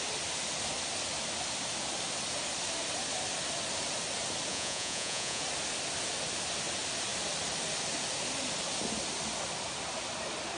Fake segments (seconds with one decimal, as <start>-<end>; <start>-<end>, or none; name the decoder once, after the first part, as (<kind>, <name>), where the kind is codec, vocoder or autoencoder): 4.5-5.4 (vocoder, Vocos)